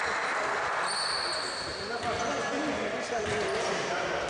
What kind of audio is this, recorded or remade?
recorded